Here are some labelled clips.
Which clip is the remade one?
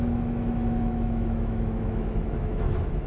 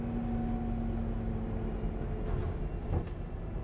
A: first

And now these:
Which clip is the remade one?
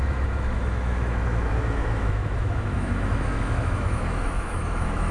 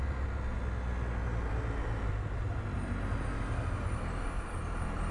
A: first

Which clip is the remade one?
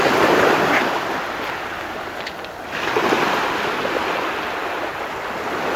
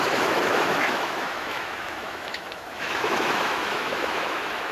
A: second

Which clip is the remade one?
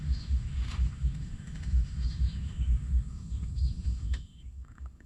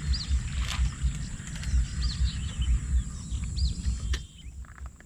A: first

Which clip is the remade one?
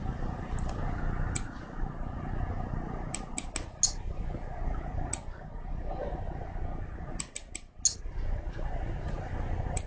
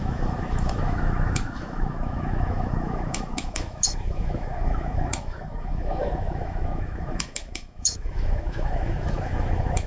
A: second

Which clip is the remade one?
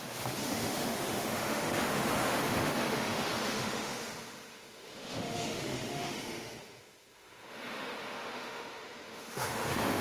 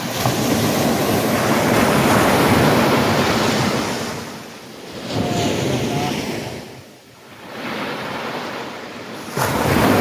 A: first